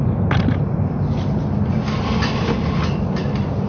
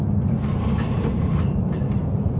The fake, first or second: second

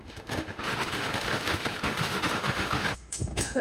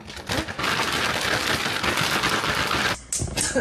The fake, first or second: first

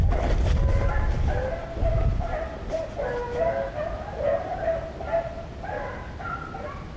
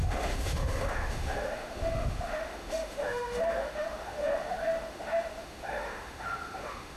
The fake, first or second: second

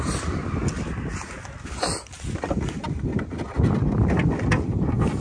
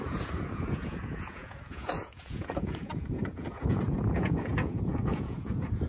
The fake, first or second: second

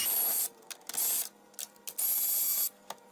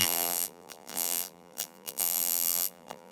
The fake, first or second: second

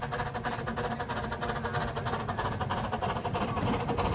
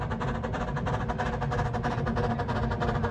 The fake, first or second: first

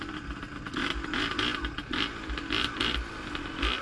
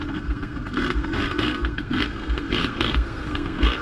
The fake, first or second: second